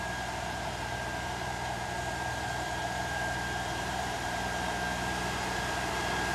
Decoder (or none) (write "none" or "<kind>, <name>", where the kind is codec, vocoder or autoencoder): vocoder, BigVGAN v2